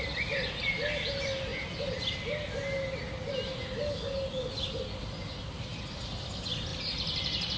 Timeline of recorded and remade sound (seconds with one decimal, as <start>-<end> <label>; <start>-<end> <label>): 0.0-5.7 recorded; 5.7-6.2 remade; 6.2-6.7 recorded; 6.7-7.6 remade